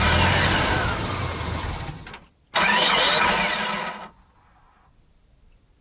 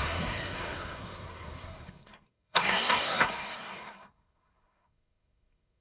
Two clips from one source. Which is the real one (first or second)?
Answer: first